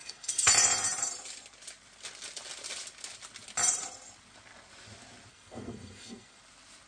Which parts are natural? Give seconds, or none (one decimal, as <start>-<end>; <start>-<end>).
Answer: 0.5-5.3; 6.4-6.9

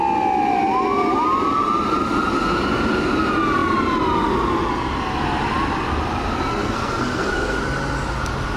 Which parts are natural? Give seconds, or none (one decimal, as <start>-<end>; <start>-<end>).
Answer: 0.0-6.5; 7.6-8.6

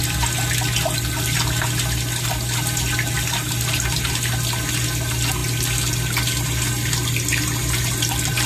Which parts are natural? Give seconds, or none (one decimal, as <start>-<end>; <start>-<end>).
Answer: 0.0-8.5

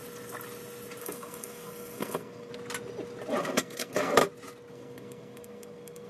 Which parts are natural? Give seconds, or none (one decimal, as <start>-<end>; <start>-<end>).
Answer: 0.0-1.0; 2.5-3.4; 4.2-4.7

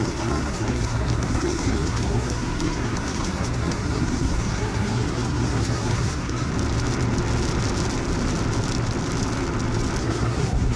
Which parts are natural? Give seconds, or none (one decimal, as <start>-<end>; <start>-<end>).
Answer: 6.5-10.0